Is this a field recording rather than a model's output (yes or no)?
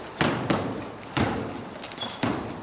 yes